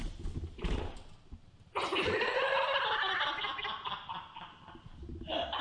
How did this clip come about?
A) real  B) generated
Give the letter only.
A